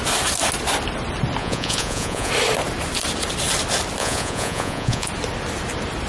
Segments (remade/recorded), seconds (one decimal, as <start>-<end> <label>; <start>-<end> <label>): 0.0-1.4 recorded; 1.4-2.3 remade; 2.3-4.0 recorded; 4.0-5.1 remade; 5.1-6.1 recorded